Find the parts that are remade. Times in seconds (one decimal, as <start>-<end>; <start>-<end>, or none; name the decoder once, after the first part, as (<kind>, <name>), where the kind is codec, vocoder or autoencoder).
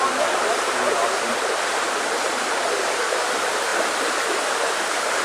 none